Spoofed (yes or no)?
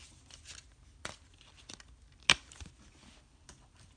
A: no